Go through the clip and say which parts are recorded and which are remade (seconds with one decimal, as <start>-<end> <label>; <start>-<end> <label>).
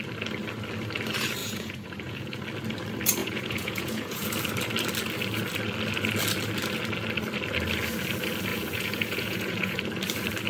0.0-1.4 recorded; 1.4-2.4 remade; 2.4-3.2 recorded; 3.2-4.3 remade; 4.3-8.5 recorded; 8.5-9.8 remade; 9.8-10.5 recorded